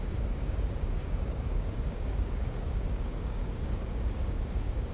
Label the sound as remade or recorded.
remade